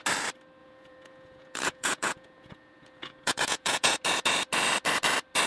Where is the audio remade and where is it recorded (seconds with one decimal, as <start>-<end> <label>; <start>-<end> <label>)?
0.0-0.6 recorded; 0.6-3.9 remade; 3.9-5.5 recorded